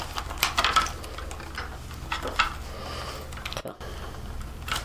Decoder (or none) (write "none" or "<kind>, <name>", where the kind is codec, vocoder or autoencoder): none